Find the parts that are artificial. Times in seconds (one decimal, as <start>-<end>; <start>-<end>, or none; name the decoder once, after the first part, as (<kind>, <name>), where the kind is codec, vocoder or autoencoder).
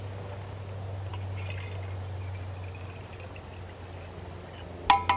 none